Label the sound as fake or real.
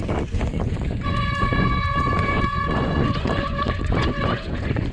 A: fake